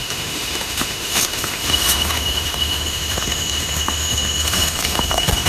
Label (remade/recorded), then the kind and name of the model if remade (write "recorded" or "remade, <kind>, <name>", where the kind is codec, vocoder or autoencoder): remade, autoencoder, DAC-VAE